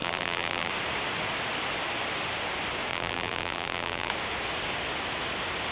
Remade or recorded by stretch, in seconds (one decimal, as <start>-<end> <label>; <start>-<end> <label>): 0.0-0.7 remade; 0.7-2.9 recorded; 2.9-4.1 remade; 4.1-5.7 recorded